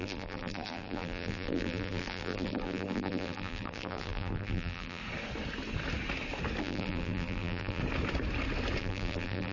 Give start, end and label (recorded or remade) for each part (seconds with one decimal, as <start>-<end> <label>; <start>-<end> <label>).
0.0-5.0 remade; 5.0-6.6 recorded; 6.6-7.8 remade; 7.8-8.8 recorded; 8.8-9.5 remade